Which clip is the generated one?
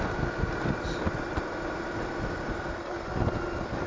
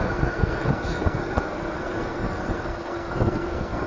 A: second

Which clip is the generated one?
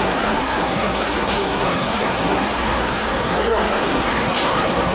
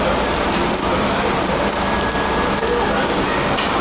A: first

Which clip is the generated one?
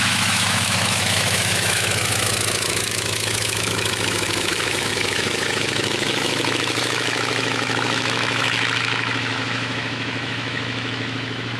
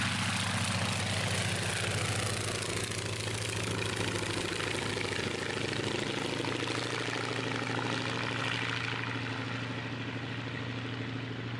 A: first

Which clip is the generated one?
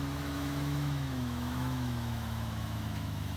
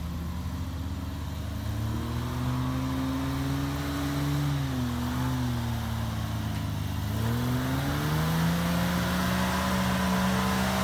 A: first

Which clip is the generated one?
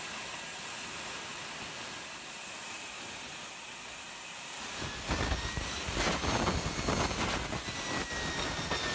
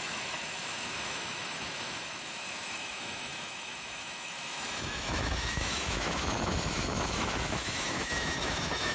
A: second